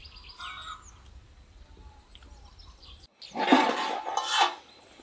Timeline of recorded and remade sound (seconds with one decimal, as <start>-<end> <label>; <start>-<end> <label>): 0.0-5.0 recorded